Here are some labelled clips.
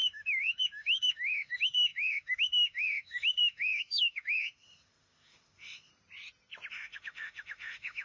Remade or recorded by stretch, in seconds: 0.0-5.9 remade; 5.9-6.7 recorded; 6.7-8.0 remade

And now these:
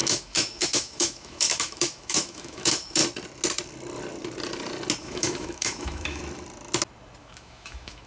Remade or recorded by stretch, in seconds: 0.0-3.0 remade; 3.0-5.0 recorded; 5.0-6.2 remade; 6.2-7.2 recorded; 7.2-8.1 remade

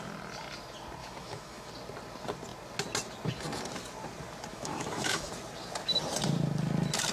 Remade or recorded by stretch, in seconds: 0.0-1.0 recorded; 1.0-1.7 remade; 1.7-4.5 recorded; 4.5-5.3 remade; 5.3-7.1 recorded

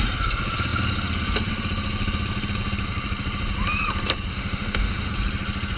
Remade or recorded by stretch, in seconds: 0.0-4.3 recorded; 4.3-5.1 remade; 5.1-5.8 recorded

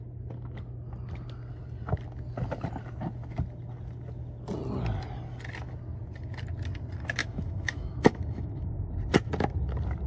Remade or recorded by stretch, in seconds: 0.0-7.2 recorded; 7.2-8.7 remade; 8.7-10.1 recorded